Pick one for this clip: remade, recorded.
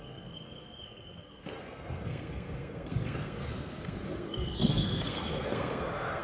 remade